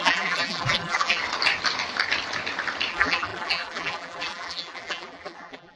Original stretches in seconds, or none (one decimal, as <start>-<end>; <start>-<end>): 1.2-2.9